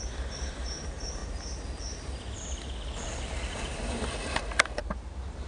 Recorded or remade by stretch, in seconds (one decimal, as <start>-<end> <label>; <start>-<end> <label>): 0.0-1.2 remade; 1.2-3.5 recorded; 3.5-5.5 remade